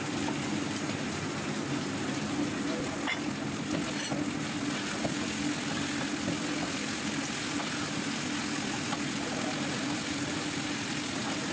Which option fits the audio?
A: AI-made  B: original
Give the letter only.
B